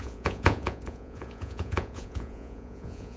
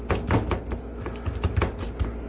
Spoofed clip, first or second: first